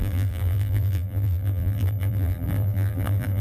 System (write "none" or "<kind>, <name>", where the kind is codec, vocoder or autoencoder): vocoder, BigVGAN v2